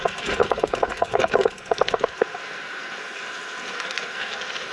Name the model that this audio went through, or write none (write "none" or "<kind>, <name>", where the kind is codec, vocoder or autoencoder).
codec, SNAC